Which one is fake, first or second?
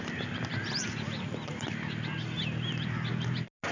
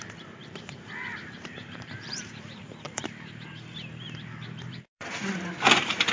second